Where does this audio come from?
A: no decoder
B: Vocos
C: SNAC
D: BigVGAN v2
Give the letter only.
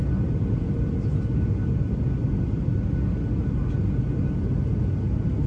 A